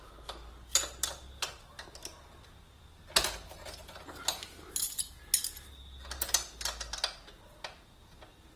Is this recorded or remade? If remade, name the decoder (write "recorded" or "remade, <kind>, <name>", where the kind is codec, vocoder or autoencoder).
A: recorded